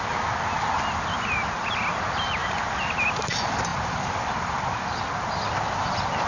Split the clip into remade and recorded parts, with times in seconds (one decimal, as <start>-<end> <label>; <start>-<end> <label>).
0.0-3.7 recorded; 3.7-4.9 remade; 4.9-6.3 recorded